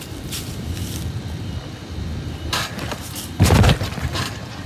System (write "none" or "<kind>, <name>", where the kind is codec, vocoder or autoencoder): vocoder, BigVGAN v2